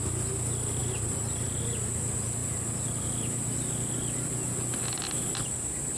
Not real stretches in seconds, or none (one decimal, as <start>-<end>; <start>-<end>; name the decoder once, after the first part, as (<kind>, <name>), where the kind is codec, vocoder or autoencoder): 0.8-1.6 (vocoder, BigVGAN v2)